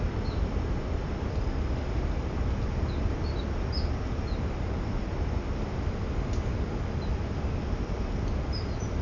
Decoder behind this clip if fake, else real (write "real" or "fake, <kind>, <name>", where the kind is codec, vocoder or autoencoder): real